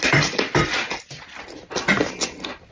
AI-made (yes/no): no